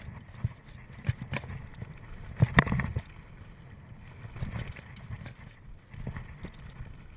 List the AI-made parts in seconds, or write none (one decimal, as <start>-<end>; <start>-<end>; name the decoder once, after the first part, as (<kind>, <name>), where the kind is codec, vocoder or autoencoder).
none